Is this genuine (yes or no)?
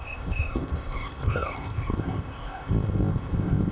no